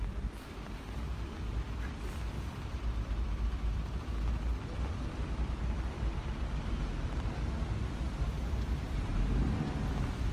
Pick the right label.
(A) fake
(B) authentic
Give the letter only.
A